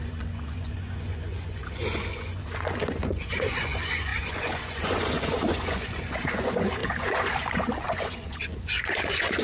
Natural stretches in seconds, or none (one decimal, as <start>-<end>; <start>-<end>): none